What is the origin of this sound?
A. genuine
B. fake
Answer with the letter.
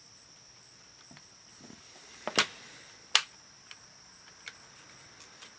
A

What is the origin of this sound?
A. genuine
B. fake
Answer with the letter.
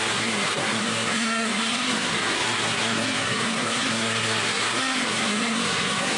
B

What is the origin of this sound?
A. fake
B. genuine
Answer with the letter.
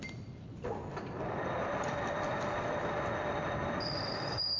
B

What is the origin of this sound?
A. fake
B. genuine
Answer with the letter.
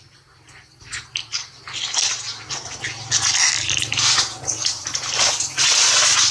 B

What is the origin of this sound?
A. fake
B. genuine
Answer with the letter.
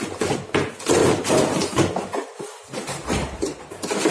B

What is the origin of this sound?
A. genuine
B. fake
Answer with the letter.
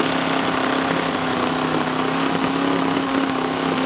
A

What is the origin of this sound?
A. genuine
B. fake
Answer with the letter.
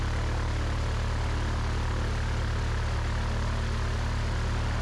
A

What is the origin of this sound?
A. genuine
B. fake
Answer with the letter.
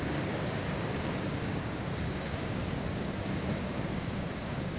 B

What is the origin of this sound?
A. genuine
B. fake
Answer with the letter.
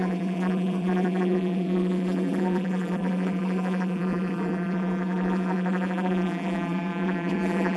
B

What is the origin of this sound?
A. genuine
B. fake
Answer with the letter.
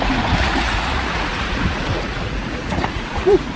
B